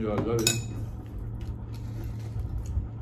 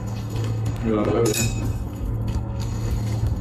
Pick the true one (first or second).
first